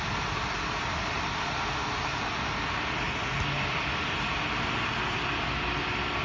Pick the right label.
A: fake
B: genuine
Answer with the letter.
B